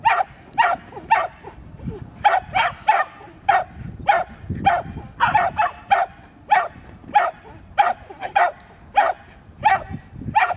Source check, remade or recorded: remade